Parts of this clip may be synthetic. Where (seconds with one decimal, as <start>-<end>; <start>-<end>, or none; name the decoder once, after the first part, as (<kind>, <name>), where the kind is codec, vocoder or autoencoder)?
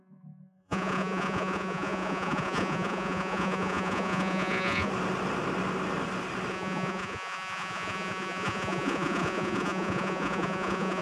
0.0-4.9 (vocoder, Vocos); 6.5-11.0